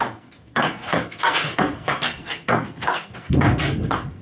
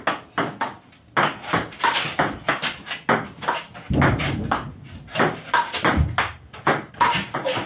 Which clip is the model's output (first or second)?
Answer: first